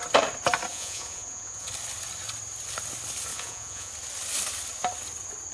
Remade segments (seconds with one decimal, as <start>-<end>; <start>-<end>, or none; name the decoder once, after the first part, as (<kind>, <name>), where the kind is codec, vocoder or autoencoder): 0.7-1.7 (vocoder, Vocos); 3.3-3.9